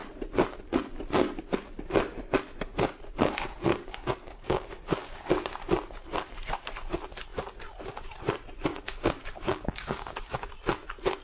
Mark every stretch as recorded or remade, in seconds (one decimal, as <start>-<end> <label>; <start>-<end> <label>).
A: 0.0-3.7 recorded; 3.7-5.3 remade; 5.3-8.7 recorded; 8.7-10.5 remade; 10.5-11.2 recorded